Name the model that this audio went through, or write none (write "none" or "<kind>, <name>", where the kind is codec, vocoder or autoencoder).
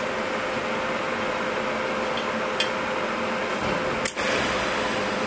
none